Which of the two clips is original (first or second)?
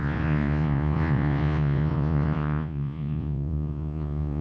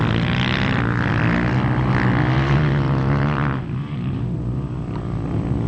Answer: second